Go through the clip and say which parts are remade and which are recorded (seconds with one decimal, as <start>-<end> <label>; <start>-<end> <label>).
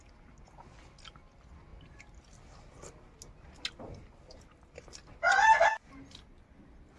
0.0-7.0 recorded